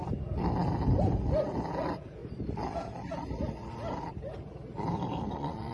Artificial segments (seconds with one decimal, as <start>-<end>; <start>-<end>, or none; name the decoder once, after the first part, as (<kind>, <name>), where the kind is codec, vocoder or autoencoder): 1.8-2.2 (vocoder, Vocos); 5.3-5.7